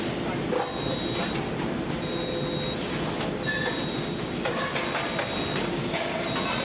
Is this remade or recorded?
recorded